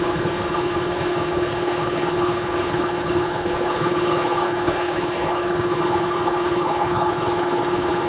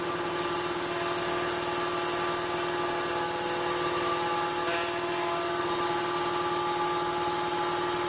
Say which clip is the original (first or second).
second